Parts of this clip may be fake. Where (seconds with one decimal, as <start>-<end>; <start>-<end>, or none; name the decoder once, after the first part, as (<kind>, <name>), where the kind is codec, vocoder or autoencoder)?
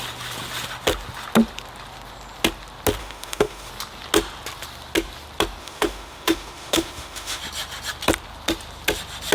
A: 3.0-3.7 (autoencoder, DAC-VAE); 5.6-7.4